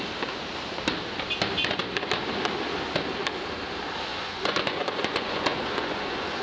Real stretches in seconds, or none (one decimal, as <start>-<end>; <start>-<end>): 0.0-4.1